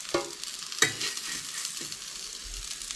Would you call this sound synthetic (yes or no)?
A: no